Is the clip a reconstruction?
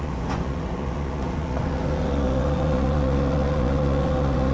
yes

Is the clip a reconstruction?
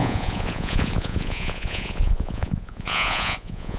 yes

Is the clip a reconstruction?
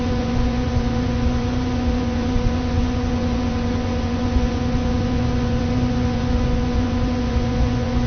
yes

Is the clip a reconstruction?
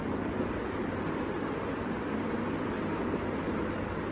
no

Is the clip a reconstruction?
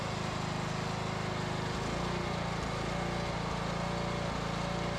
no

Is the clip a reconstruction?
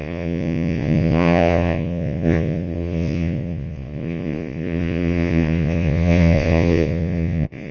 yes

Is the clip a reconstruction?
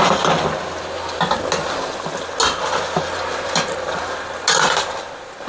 no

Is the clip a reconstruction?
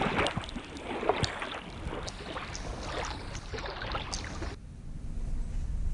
no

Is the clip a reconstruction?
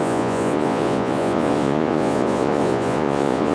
yes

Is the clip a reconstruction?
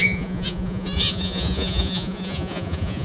yes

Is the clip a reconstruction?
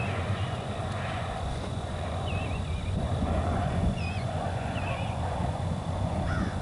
yes